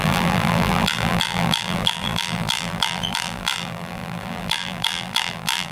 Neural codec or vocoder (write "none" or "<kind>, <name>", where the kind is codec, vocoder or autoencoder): vocoder, BigVGAN v2